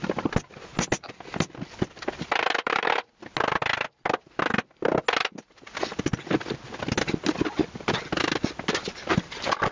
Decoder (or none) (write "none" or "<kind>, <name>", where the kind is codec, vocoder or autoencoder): none